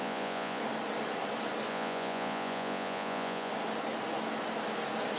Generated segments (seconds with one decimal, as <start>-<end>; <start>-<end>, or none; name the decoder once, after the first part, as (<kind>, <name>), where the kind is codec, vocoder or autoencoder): 0.0-0.6 (vocoder, Vocos); 1.7-3.5